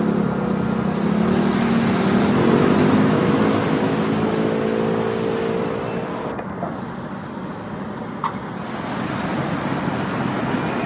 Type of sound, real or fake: real